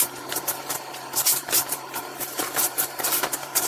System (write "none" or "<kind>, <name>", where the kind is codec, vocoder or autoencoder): vocoder, BigVGAN v2